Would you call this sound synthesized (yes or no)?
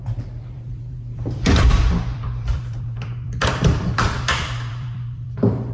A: yes